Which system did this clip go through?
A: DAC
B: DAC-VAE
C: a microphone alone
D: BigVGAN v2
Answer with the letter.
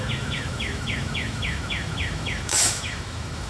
B